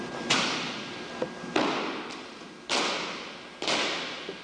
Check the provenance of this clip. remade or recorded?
recorded